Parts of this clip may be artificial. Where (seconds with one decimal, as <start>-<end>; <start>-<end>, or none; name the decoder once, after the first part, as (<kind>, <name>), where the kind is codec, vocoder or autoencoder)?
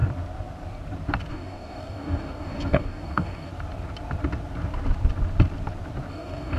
1.3-3.5 (codec, DAC); 6.1-6.6